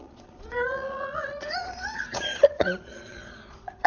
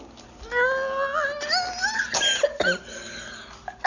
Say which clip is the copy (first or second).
first